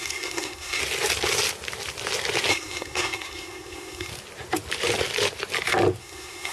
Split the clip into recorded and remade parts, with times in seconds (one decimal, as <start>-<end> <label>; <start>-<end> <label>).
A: 0.0-0.8 remade; 0.8-2.5 recorded; 2.5-4.1 remade; 4.1-6.0 recorded; 6.0-6.5 remade